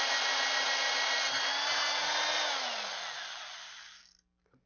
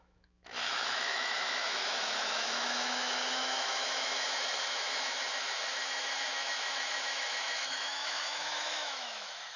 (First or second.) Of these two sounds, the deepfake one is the second